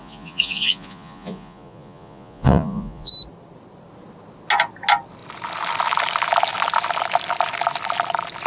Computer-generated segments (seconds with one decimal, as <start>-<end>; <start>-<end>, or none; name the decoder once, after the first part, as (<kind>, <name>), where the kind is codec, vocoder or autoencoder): 0.0-3.1 (vocoder, Vocos)